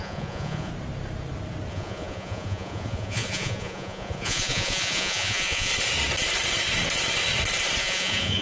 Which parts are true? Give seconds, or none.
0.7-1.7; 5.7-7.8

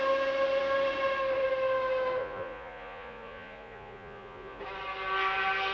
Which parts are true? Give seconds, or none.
0.0-2.2; 4.6-5.7

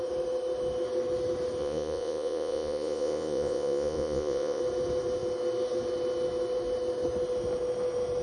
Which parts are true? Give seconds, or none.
0.0-1.6; 4.6-8.2

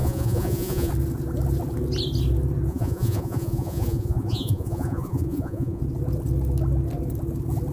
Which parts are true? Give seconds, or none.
0.9-2.7; 5.8-7.7

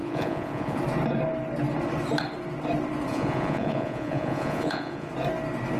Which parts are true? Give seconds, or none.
0.8-3.1; 5.1-5.8

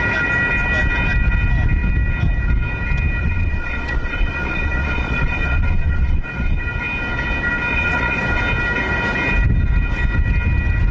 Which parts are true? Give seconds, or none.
0.0-3.2; 6.6-7.7; 8.2-10.9